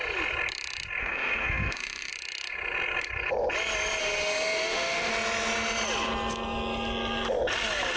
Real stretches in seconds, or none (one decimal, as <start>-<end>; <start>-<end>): 0.0-1.0; 2.1-4.0; 5.1-8.0